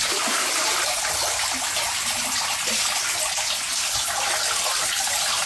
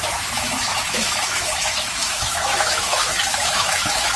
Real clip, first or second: first